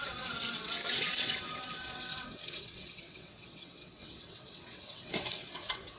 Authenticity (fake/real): fake